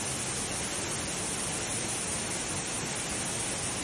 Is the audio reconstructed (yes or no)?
no